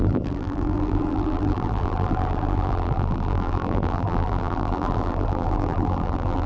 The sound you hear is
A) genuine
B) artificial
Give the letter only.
B